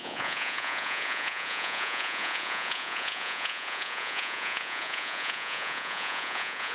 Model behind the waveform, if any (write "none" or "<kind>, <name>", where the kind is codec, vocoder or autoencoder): vocoder, Vocos